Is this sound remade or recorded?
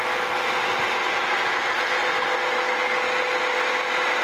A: recorded